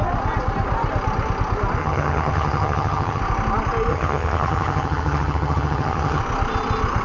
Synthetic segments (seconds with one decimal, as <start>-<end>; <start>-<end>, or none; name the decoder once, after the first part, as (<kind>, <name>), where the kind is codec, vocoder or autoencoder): 1.8-3.2 (vocoder, HiFi-GAN); 3.9-6.2